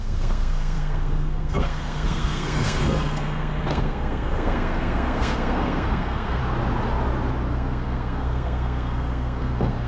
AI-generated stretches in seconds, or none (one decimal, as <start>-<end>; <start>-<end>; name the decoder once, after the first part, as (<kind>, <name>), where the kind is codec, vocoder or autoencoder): 0.0-6.4 (codec, SNAC); 7.5-9.9